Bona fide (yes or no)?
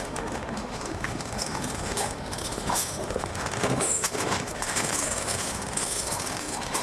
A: no